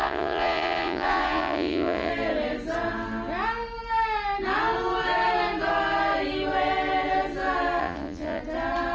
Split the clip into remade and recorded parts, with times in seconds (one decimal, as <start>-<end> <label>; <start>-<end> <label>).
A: 0.0-2.1 remade; 2.1-7.8 recorded; 7.8-8.4 remade; 8.4-8.9 recorded